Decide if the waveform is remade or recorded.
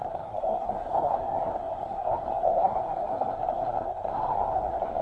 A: remade